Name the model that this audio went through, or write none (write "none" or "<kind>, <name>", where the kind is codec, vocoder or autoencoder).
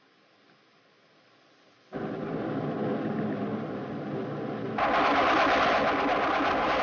none